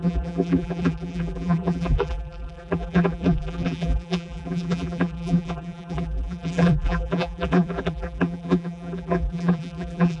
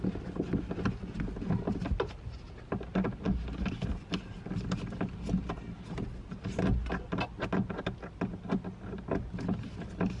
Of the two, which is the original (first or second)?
second